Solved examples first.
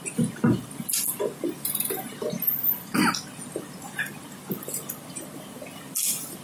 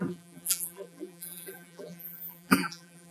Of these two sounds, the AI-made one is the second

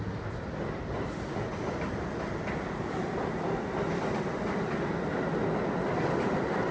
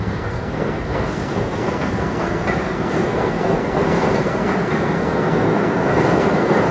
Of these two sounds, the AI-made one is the second